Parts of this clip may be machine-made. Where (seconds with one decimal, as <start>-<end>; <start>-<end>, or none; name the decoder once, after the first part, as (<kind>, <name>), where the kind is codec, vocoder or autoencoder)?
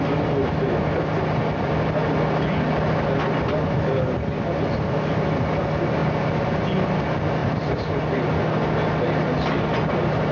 7.4-8.0 (vocoder, BigVGAN v2)